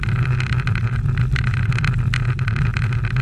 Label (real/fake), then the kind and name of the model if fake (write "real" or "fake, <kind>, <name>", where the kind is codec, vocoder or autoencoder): real